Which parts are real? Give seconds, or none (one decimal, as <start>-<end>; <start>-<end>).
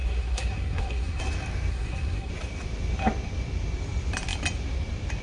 1.2-1.7; 2.3-5.2